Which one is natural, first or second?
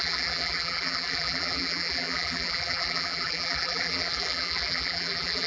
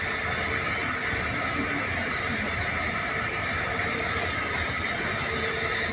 second